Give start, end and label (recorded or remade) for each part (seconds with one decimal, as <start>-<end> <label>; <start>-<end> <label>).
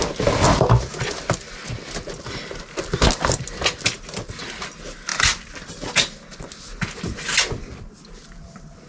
0.0-8.9 recorded